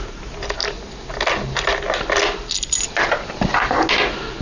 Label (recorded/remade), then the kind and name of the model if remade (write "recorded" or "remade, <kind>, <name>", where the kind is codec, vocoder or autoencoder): recorded